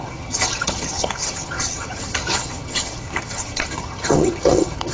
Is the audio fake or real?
fake